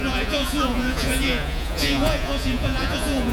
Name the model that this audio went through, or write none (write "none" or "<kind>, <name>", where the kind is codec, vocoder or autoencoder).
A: vocoder, Vocos